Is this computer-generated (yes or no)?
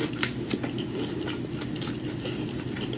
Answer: no